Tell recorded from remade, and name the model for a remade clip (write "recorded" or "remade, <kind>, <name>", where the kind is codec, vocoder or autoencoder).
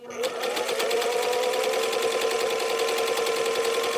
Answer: recorded